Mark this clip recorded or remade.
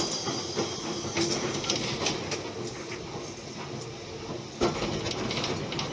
recorded